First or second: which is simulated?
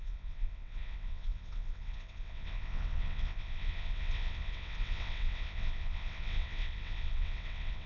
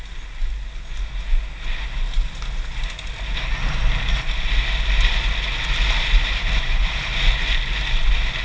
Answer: first